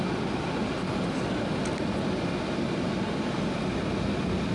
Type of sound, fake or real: real